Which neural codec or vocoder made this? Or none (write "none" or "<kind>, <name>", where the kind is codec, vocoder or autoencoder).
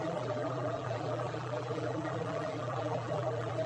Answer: vocoder, BigVGAN v2